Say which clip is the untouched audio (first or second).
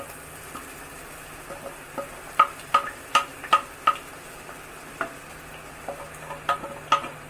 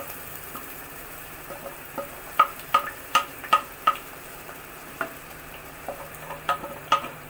first